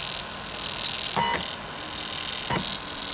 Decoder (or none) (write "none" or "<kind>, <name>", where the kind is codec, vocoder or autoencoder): none